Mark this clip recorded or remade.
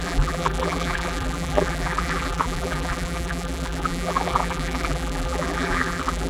remade